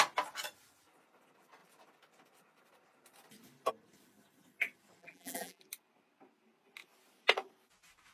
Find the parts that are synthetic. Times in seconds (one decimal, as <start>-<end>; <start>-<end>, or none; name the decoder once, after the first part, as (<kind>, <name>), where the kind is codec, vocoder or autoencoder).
5.0-5.6 (vocoder, BigVGAN v2)